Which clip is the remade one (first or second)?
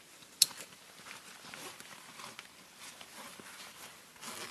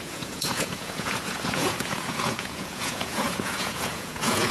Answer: second